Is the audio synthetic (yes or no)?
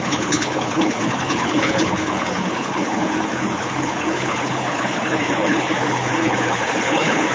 yes